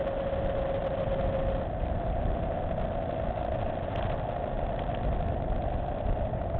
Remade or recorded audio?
recorded